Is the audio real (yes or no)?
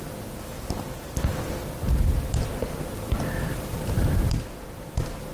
yes